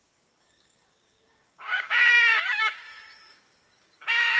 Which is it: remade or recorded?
remade